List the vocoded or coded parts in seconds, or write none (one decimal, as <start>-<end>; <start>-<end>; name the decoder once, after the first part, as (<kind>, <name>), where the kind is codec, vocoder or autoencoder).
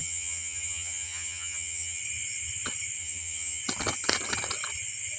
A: 0.0-2.0 (vocoder, HiFi-GAN); 3.0-3.6